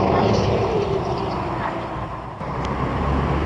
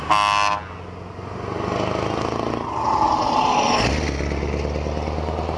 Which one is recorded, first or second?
second